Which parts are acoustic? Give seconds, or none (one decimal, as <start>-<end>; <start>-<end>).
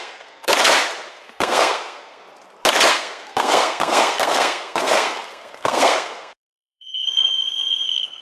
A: 0.5-1.1; 2.2-2.9